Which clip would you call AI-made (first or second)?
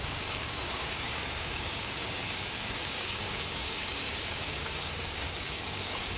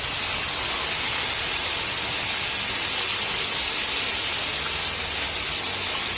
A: first